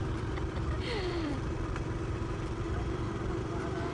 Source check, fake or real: fake